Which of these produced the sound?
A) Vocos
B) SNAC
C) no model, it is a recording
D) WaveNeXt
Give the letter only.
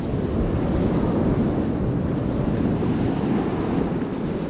C